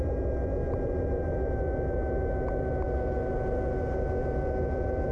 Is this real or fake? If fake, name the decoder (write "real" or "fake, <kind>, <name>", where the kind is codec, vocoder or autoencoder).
real